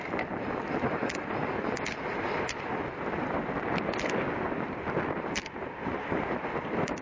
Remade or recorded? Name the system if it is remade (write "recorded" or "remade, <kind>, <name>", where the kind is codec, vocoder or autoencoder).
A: recorded